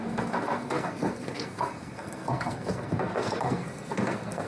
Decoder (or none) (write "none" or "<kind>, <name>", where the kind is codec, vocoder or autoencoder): codec, SNAC